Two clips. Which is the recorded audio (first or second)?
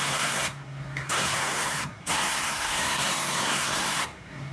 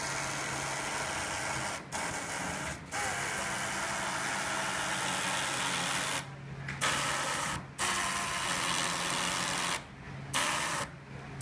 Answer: second